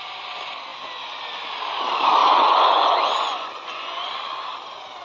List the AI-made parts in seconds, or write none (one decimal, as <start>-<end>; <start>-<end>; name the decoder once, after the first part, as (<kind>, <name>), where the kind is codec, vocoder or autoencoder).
2.2-4.1 (vocoder, Vocos)